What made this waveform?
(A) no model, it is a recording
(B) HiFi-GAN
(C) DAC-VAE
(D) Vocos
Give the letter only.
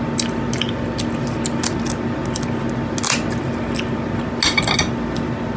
A